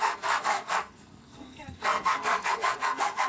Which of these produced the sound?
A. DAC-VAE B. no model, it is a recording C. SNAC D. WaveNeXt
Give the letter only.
C